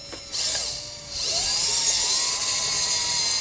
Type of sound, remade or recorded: recorded